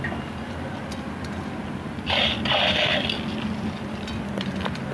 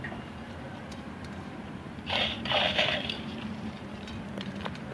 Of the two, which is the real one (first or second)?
first